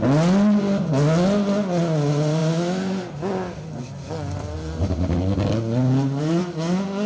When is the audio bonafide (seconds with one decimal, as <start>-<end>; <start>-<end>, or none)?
0.0-7.1